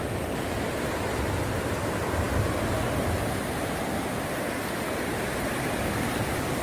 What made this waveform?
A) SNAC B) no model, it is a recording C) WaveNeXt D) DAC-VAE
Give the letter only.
B